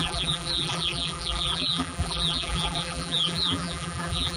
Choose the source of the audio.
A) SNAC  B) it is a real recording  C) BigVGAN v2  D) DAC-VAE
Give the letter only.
C